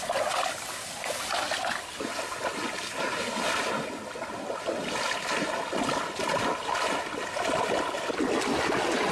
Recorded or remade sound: recorded